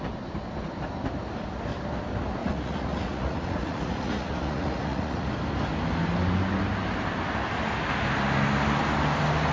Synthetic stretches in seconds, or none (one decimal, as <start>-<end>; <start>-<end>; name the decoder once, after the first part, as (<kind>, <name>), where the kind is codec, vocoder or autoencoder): 2.4-5.3 (vocoder, Vocos)